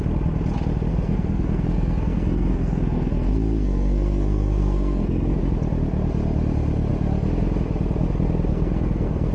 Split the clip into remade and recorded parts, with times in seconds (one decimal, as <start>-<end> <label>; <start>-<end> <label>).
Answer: 0.0-0.9 recorded; 0.9-5.4 remade; 5.4-8.5 recorded; 8.5-9.3 remade